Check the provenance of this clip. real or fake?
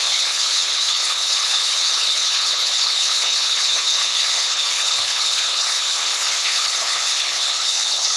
fake